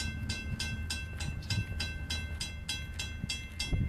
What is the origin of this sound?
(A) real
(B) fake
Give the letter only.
A